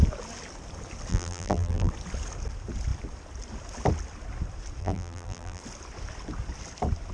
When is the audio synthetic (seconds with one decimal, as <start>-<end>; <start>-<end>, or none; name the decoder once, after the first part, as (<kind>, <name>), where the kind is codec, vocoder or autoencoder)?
1.1-1.9 (vocoder, BigVGAN v2); 4.8-5.6